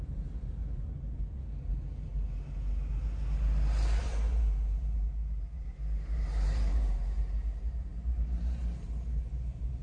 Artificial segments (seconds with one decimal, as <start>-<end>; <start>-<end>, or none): 0.0-0.6; 1.2-2.1; 4.0-9.8